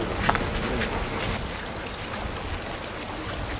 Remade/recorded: recorded